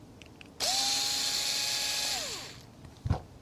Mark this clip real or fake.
real